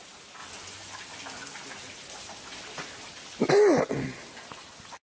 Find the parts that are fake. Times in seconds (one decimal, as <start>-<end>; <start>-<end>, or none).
none